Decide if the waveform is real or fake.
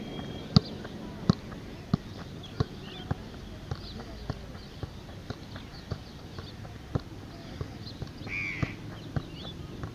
real